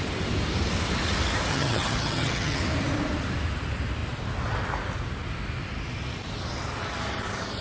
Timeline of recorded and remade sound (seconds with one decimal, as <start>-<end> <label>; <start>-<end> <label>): 0.0-1.5 recorded; 1.5-2.6 remade; 2.6-7.6 recorded